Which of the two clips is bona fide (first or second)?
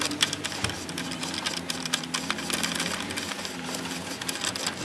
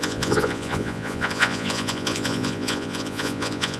first